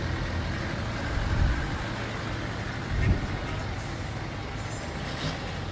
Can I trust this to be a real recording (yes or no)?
yes